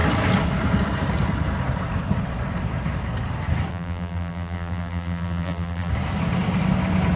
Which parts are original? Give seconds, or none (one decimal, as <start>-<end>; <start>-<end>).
0.0-3.7; 5.9-7.2

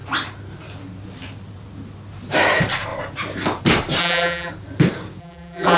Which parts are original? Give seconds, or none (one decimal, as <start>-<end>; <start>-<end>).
0.0-4.0; 4.5-5.2

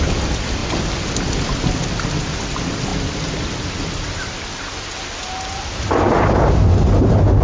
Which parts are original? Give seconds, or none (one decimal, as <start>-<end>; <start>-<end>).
0.0-7.4